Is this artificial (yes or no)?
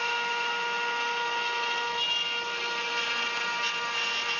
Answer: no